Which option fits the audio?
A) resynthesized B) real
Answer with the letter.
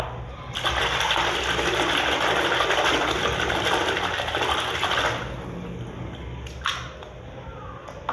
B